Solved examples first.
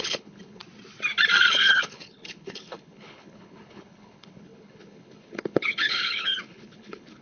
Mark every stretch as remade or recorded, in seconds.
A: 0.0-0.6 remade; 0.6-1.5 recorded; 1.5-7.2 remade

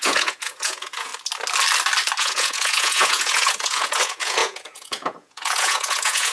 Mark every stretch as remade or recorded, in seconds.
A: 0.0-1.1 remade; 1.1-2.2 recorded; 2.2-6.3 remade